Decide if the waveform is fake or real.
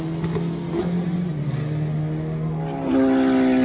real